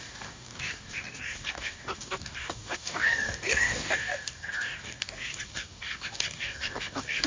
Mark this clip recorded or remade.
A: remade